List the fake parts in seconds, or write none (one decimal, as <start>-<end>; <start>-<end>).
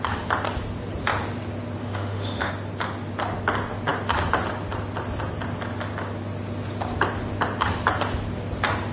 1.8-2.5